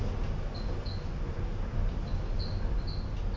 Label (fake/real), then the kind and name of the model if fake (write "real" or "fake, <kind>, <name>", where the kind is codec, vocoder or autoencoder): real